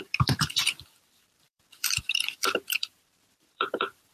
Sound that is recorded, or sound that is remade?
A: remade